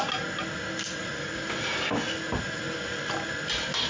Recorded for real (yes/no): yes